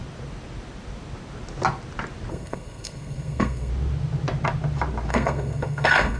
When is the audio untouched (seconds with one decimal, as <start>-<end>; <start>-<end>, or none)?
0.0-2.3; 3.7-5.1